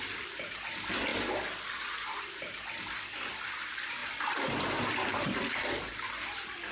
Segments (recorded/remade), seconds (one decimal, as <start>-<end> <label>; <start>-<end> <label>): 0.0-4.0 recorded; 4.0-4.6 remade; 4.6-5.1 recorded; 5.1-5.9 remade; 5.9-6.7 recorded